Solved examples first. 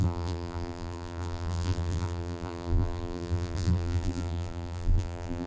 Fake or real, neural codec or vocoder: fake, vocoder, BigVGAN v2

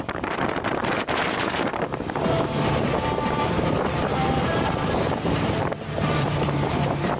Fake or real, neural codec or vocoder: fake, vocoder, BigVGAN v2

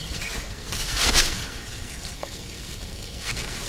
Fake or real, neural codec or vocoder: fake, codec, SNAC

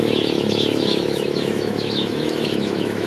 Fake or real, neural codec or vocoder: fake, autoencoder, DAC-VAE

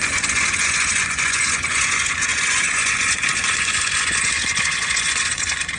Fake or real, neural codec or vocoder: fake, vocoder, Vocos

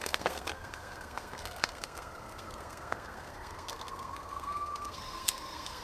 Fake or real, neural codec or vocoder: fake, codec, SNAC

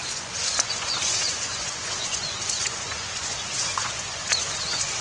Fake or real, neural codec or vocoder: fake, vocoder, Vocos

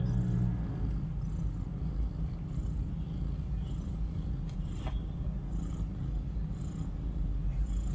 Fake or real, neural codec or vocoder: real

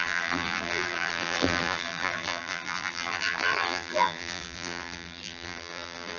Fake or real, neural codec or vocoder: fake, vocoder, BigVGAN v2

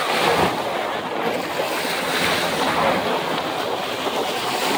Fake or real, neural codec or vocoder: real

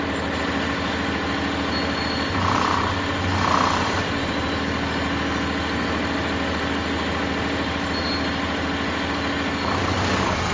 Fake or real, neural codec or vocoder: real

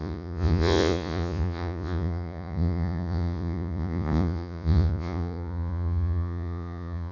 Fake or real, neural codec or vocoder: fake, vocoder, Vocos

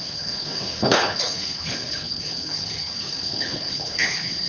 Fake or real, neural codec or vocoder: fake, codec, HILCodec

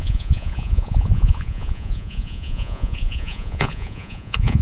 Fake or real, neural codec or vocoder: fake, vocoder, Vocos